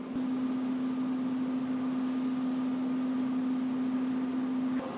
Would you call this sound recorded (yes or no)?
yes